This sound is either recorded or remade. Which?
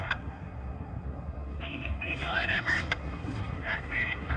remade